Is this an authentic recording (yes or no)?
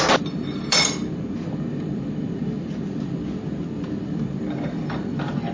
no